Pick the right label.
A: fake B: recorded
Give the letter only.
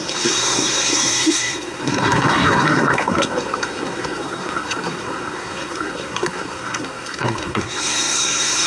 A